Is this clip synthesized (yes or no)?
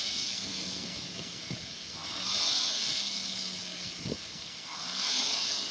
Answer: yes